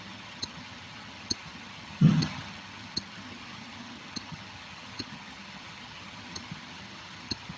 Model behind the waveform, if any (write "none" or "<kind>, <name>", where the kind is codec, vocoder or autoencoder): vocoder, HiFi-GAN